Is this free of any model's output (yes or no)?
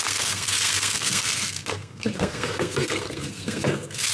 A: no